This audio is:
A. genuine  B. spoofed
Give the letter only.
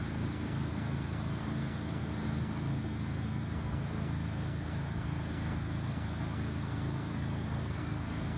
B